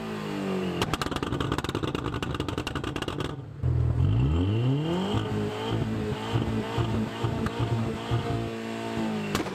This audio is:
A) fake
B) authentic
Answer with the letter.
B